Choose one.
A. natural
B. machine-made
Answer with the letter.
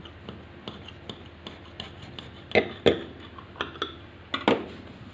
A